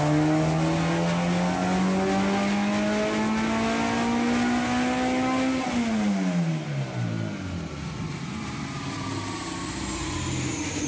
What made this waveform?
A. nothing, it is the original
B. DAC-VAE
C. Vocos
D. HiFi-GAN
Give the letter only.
A